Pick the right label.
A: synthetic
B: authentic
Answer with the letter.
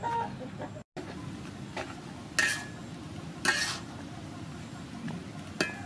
B